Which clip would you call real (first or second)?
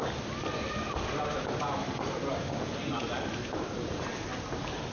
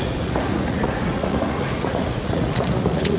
first